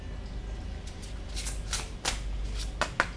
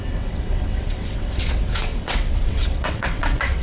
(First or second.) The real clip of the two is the first